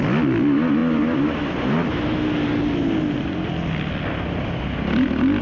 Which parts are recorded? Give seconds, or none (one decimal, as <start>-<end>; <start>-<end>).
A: 0.0-5.4

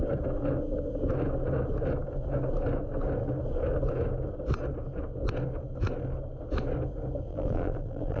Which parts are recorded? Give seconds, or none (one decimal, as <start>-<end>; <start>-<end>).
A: 0.0-7.3

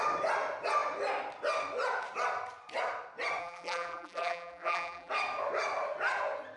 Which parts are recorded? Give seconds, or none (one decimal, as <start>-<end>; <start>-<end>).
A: 0.0-3.4; 5.1-6.6

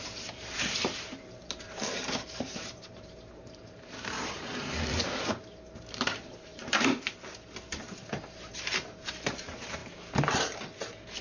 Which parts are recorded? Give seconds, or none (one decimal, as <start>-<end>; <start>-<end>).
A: 9.8-11.2